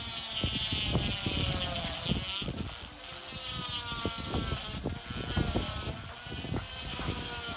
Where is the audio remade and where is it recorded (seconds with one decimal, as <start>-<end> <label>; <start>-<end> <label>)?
0.0-6.9 recorded; 6.9-7.6 remade